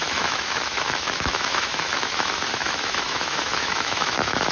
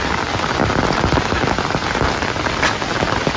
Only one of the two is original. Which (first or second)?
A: second